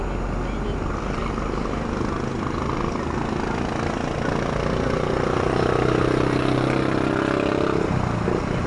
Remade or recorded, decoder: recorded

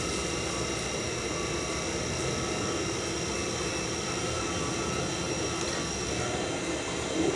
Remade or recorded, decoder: recorded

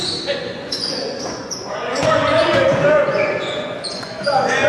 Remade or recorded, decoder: remade, vocoder, Vocos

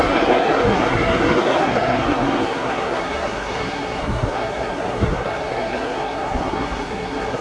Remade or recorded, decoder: remade, codec, SNAC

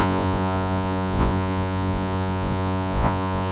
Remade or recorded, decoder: remade, vocoder, Vocos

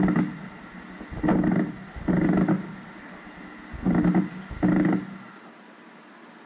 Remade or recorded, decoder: recorded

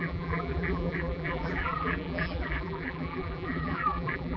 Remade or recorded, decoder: remade, vocoder, BigVGAN v2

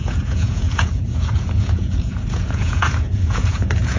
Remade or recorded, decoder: remade, vocoder, Vocos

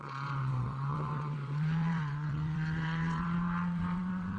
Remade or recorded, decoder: remade, vocoder, WaveNeXt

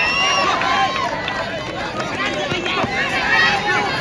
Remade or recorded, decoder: recorded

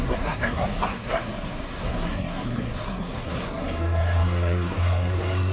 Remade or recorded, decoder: remade, codec, SNAC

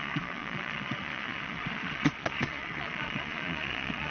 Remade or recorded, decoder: remade, vocoder, Vocos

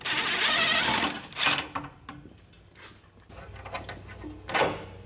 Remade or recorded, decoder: recorded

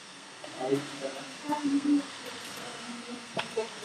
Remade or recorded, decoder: remade, codec, SNAC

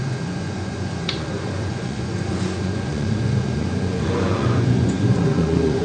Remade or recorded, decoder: remade, vocoder, Vocos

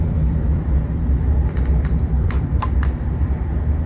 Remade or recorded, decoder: remade, vocoder, BigVGAN v2